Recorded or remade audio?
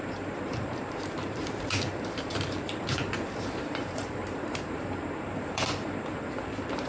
remade